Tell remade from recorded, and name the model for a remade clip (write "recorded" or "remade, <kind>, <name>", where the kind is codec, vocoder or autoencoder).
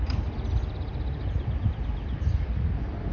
recorded